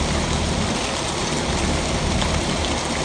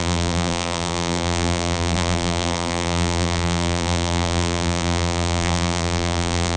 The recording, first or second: first